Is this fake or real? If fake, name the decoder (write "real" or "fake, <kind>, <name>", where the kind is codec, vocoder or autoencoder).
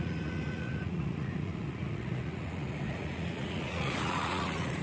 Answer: fake, vocoder, Vocos